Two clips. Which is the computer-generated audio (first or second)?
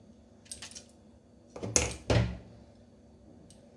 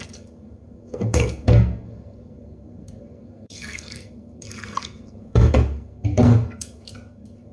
second